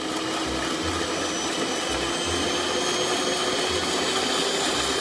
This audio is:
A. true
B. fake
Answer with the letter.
A